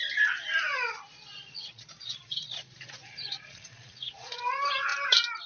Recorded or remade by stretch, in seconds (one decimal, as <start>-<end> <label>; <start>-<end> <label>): 0.0-1.1 recorded; 1.1-4.4 remade; 4.4-5.5 recorded